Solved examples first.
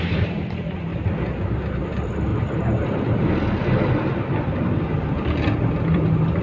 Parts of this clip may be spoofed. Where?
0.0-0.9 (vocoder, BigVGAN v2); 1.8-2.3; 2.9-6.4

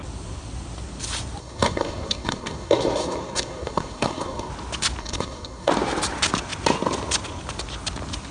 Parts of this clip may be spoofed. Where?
1.4-4.5 (codec, SNAC); 5.0-5.7

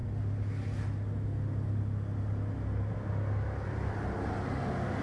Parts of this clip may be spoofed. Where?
none

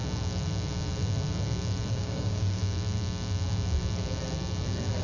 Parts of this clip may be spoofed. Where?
1.9-2.6 (codec, DAC)

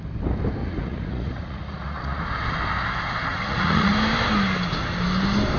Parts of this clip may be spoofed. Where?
0.6-2.2 (vocoder, Vocos); 3.3-3.9

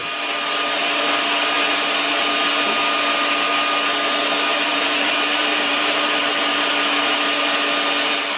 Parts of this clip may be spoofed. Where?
4.5-6.3 (vocoder, BigVGAN v2)

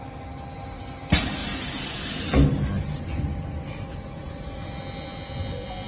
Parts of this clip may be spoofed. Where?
none

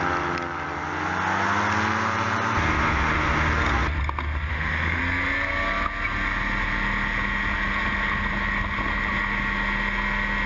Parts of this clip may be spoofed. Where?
4.5-5.0 (autoencoder, DAC-VAE)